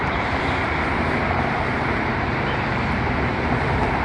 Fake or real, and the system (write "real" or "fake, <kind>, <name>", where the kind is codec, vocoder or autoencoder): fake, vocoder, BigVGAN v2